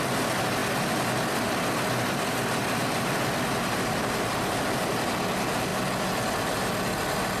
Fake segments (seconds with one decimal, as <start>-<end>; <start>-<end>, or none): 2.8-4.8